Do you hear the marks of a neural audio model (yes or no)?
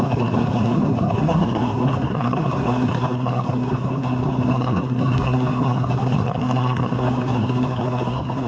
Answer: yes